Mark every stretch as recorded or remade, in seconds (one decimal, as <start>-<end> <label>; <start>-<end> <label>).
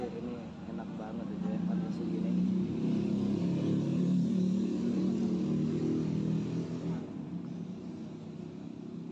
0.0-3.9 recorded; 3.9-5.8 remade; 5.8-9.1 recorded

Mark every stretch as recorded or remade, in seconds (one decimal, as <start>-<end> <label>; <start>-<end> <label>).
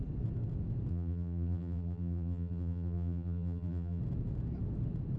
0.0-0.9 recorded; 0.9-4.0 remade; 4.0-5.2 recorded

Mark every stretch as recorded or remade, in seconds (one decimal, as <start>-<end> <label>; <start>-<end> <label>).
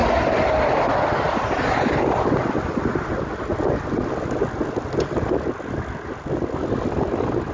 0.0-7.5 recorded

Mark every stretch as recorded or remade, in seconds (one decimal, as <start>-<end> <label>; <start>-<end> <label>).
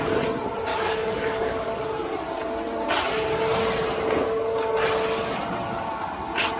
0.0-0.7 recorded; 0.7-1.8 remade; 1.8-6.6 recorded